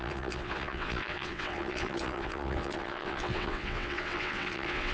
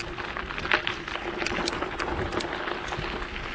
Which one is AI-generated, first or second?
first